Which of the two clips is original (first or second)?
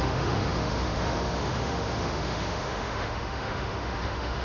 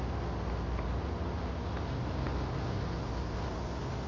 second